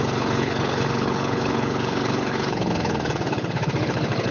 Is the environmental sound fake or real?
fake